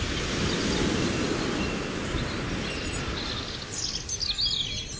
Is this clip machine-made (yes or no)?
no